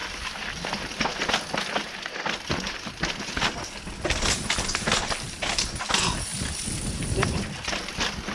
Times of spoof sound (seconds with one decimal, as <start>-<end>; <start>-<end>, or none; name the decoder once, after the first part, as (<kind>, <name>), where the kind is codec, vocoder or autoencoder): 6.3-7.9 (vocoder, BigVGAN v2)